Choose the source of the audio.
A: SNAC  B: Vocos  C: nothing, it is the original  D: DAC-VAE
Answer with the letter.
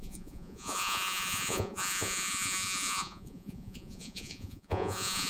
B